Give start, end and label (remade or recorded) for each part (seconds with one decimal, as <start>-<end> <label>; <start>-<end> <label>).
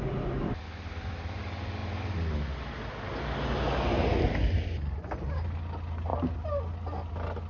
0.0-7.5 recorded